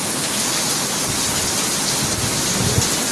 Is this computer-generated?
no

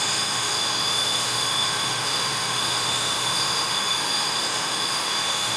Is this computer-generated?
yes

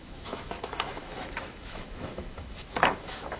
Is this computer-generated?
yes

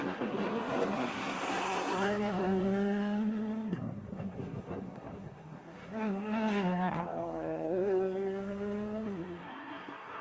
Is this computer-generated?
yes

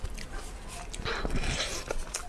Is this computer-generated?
no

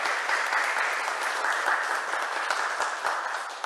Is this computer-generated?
no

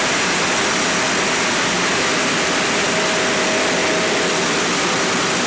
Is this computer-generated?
no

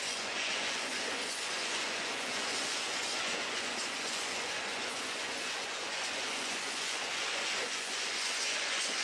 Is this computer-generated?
yes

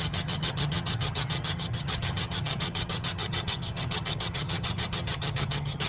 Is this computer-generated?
yes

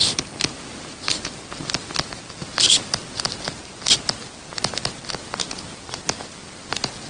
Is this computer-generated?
no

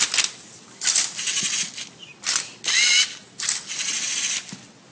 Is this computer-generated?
no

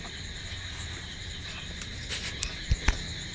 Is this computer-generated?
no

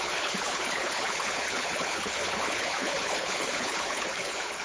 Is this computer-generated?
yes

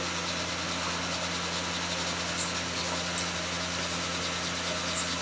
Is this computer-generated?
no